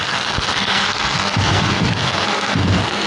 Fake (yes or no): yes